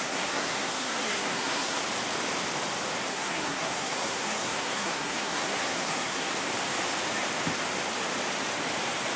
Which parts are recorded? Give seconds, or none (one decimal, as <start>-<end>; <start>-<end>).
1.8-3.1; 6.3-9.2